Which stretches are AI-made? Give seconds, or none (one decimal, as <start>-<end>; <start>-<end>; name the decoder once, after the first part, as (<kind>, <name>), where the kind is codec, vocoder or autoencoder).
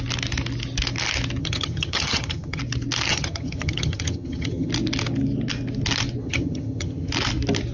1.4-2.6 (vocoder, HiFi-GAN); 3.1-4.7; 6.2-7.1